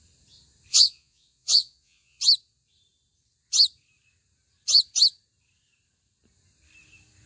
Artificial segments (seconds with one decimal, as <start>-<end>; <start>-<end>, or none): 0.7-2.2